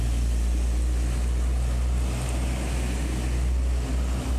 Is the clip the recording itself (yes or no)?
yes